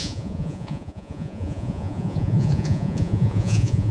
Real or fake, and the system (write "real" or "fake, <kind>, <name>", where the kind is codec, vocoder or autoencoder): fake, vocoder, Vocos